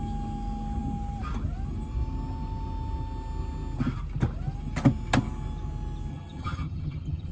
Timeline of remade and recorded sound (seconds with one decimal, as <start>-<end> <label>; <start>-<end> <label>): 0.0-6.1 recorded; 6.1-7.3 remade